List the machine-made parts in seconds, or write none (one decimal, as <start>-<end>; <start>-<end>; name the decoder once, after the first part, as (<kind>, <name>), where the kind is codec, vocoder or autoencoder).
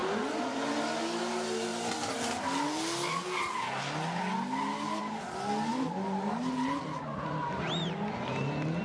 none